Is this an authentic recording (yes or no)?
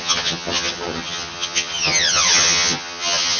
no